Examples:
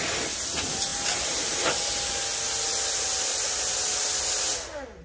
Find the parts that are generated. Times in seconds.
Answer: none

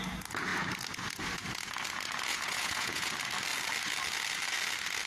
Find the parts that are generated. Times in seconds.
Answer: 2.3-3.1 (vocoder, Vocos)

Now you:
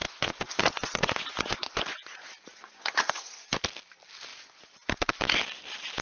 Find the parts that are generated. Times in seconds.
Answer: 0.0-3.6 (vocoder, Vocos); 4.3-5.0

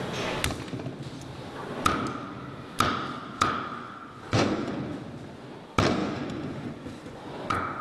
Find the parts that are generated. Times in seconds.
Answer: 3.7-4.8 (vocoder, Vocos); 6.0-7.8

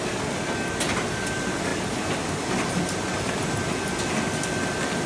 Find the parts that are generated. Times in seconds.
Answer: none